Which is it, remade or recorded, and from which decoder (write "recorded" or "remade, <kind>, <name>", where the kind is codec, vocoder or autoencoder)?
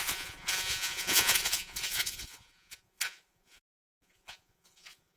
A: remade, vocoder, Vocos